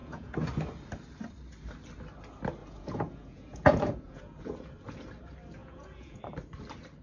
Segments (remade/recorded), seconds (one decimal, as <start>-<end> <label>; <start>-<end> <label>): 0.0-0.5 remade; 0.5-2.6 recorded; 2.6-4.4 remade; 4.4-5.6 recorded; 5.6-6.2 remade; 6.2-7.0 recorded